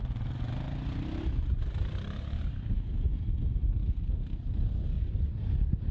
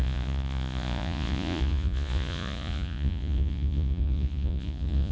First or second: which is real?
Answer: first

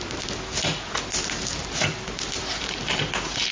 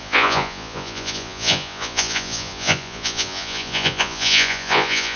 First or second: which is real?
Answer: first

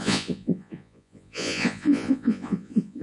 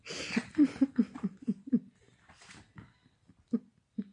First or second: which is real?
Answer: second